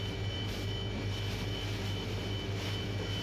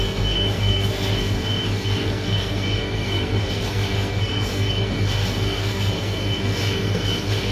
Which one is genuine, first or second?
first